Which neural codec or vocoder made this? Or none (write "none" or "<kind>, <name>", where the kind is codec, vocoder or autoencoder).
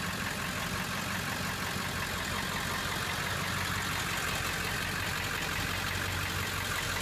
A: none